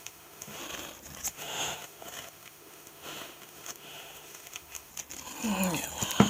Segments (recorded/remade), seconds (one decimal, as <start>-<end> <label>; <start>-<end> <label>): 0.0-0.6 remade; 0.6-1.3 recorded; 1.3-4.9 remade; 4.9-6.3 recorded